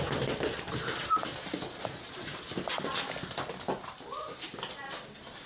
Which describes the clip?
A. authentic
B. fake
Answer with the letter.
A